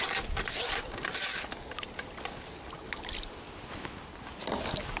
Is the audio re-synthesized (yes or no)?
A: no